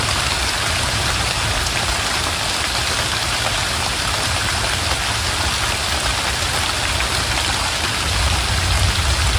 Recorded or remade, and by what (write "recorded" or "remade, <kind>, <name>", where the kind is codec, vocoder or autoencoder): recorded